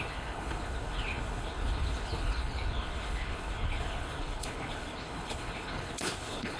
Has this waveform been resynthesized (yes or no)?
yes